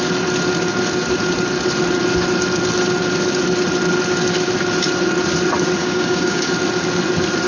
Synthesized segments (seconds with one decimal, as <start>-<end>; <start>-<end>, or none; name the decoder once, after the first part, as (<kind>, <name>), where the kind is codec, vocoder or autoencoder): 5.8-6.5 (codec, DAC)